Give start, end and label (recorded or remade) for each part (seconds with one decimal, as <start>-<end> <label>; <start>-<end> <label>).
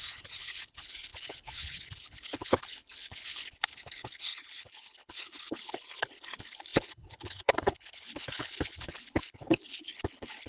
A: 0.0-10.5 remade